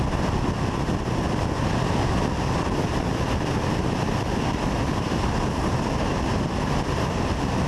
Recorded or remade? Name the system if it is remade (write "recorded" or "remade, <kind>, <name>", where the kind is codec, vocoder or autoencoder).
recorded